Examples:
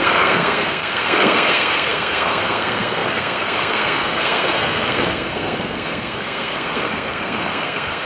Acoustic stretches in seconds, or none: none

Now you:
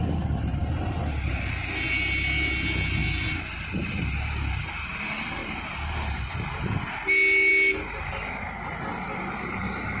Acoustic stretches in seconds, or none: 0.0-10.0

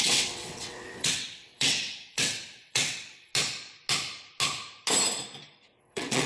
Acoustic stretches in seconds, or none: 3.3-5.8

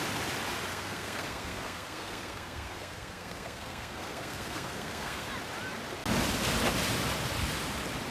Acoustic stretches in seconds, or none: 0.0-0.7; 5.3-8.1

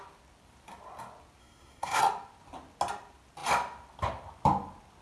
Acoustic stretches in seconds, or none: 0.0-1.4; 2.0-5.0